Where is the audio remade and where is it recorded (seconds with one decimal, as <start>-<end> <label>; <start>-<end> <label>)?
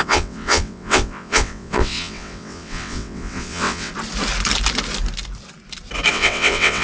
0.0-3.9 remade; 3.9-6.1 recorded; 6.1-6.8 remade